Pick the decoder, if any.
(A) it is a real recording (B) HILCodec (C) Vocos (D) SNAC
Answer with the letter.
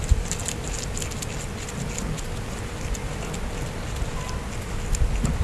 A